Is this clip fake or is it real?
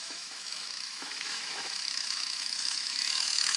fake